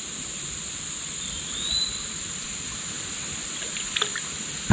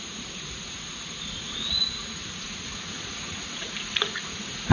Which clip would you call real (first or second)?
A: first